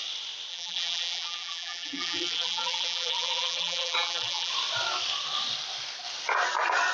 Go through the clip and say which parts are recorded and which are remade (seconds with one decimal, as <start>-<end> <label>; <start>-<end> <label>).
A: 0.0-0.5 recorded; 0.5-4.5 remade; 4.5-6.9 recorded